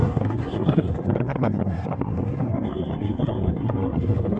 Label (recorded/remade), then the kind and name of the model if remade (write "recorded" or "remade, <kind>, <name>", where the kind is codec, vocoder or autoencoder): remade, codec, SNAC